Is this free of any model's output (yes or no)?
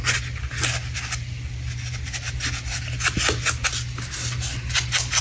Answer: yes